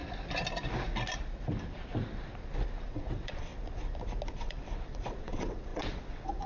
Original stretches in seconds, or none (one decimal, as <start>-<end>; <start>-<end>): 0.0-2.8; 3.5-4.3